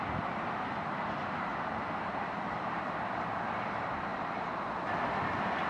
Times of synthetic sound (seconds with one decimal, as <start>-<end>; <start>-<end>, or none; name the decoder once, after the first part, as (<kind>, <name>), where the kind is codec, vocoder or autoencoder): 1.5-2.9 (vocoder, BigVGAN v2); 4.1-4.6